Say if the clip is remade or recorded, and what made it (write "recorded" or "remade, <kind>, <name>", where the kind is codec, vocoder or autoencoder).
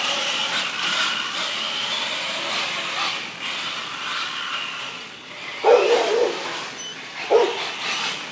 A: recorded